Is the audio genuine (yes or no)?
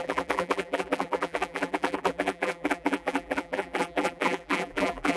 no